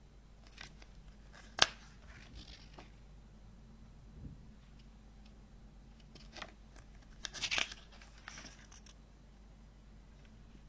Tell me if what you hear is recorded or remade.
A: recorded